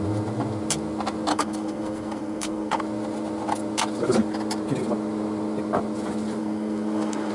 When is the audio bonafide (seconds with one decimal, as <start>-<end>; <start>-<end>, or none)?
0.0-1.3; 2.8-6.4